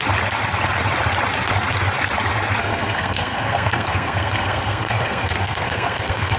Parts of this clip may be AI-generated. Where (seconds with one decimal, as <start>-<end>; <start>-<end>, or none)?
2.6-6.4